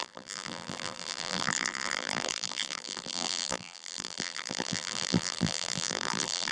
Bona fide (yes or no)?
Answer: no